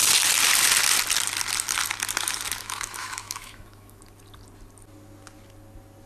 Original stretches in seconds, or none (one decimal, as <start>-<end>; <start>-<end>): 0.0-2.6; 4.0-6.1